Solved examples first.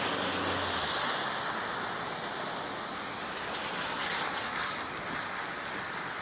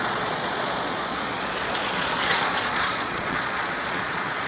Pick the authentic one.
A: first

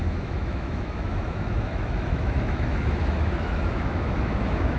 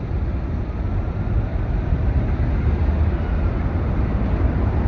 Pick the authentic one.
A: second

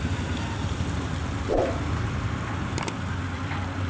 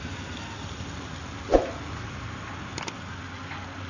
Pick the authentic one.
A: second